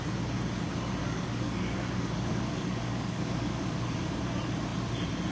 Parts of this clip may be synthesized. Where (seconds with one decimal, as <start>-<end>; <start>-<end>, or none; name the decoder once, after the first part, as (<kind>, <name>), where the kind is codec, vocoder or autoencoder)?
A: 1.0-4.2 (codec, DAC)